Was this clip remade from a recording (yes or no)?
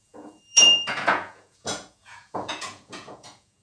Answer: yes